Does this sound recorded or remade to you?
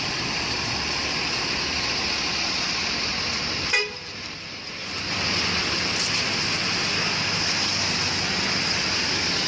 recorded